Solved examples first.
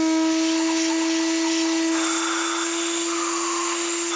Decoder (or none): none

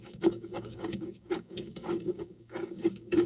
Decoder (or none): codec, DAC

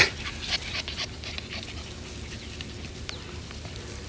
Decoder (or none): none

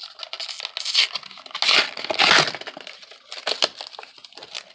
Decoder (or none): none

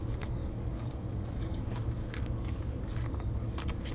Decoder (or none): codec, DAC